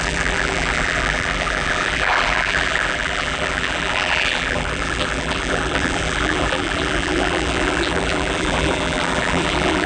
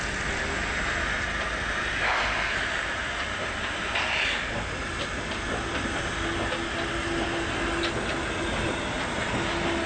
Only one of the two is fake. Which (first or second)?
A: first